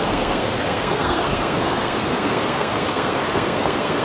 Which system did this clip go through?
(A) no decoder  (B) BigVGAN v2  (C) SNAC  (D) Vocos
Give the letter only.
C